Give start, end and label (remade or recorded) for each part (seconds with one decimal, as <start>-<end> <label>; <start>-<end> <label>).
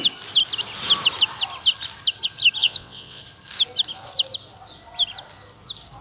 0.0-2.6 recorded; 2.6-3.2 remade; 3.2-6.0 recorded